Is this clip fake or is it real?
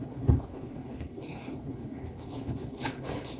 fake